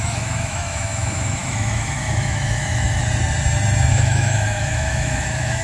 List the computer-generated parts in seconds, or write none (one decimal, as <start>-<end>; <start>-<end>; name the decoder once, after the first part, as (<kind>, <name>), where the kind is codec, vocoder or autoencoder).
0.0-3.0 (autoencoder, DAC-VAE); 3.9-5.6